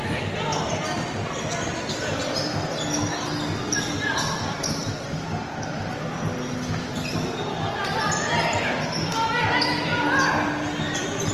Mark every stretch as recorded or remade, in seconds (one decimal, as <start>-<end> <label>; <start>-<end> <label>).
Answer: 0.0-11.3 recorded